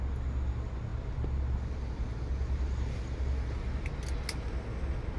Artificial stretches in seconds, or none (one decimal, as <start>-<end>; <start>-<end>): none